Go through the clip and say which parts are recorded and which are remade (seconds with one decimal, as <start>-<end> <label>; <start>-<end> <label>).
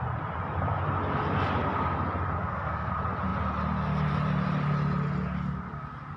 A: 0.0-2.4 recorded; 2.4-2.9 remade; 2.9-6.2 recorded